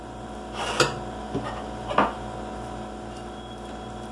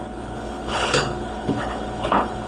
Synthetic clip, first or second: second